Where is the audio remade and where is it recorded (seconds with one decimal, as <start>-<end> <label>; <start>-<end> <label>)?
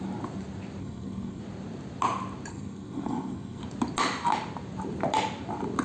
0.0-0.8 recorded; 0.8-1.4 remade; 1.4-2.5 recorded; 2.5-3.6 remade; 3.6-5.8 recorded